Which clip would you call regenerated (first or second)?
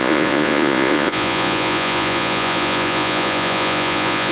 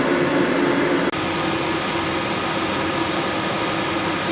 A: first